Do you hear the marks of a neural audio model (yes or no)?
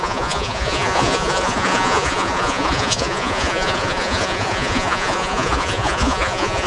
yes